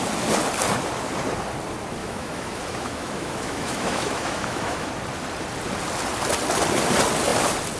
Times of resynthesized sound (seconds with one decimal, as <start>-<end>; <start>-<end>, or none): 2.0-4.9

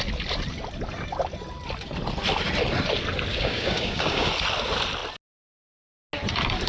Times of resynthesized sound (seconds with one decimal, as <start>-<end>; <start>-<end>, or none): 3.3-4.3

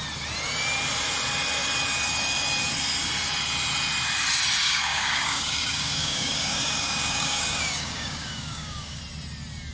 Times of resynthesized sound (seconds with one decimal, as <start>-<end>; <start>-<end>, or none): 4.6-9.0

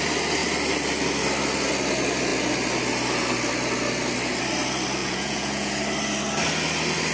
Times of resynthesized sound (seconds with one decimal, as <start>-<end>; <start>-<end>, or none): 5.0-5.8